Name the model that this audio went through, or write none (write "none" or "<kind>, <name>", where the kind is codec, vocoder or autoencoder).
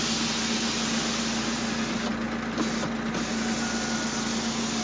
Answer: none